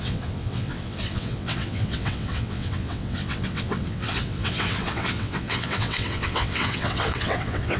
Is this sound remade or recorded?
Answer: remade